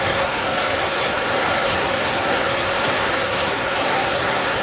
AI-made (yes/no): yes